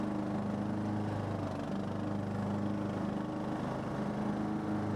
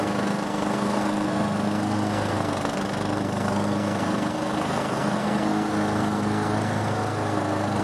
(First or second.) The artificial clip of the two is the second